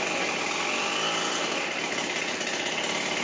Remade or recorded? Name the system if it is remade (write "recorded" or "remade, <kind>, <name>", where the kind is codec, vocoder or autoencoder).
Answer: recorded